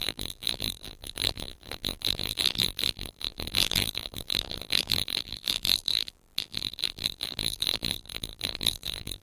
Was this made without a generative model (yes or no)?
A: no